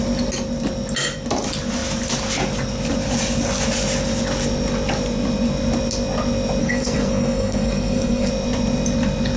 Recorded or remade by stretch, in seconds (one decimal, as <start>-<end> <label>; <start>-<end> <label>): 0.0-6.6 recorded; 6.6-8.3 remade; 8.3-9.4 recorded